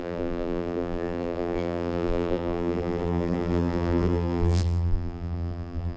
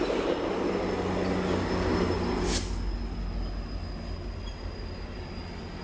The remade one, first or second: first